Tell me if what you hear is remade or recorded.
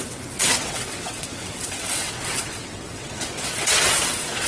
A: remade